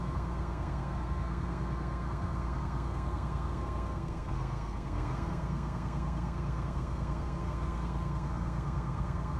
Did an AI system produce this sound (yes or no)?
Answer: yes